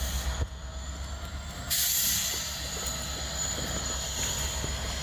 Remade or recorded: recorded